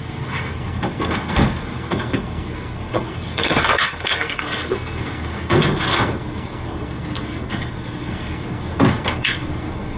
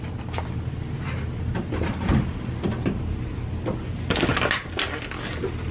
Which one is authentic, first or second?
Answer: second